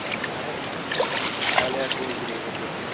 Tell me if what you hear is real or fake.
real